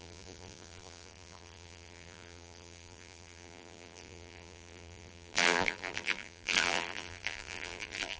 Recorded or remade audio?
remade